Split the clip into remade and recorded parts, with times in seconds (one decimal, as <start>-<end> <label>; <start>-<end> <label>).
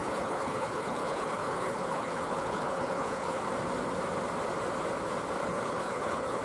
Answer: 0.0-3.4 remade; 3.4-5.4 recorded; 5.4-6.4 remade